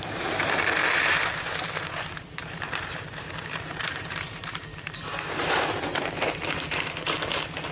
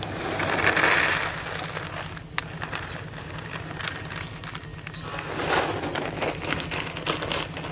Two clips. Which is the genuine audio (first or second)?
second